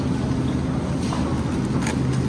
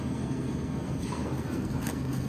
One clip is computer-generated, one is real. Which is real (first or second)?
first